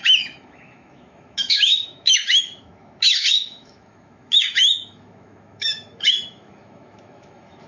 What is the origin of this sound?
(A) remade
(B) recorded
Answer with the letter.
A